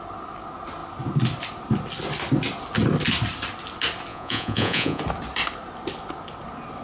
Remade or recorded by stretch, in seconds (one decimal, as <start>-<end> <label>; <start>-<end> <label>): 0.0-4.1 recorded; 4.1-5.0 remade; 5.0-6.8 recorded